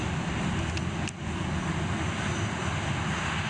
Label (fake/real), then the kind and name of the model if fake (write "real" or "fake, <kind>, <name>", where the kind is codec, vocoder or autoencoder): real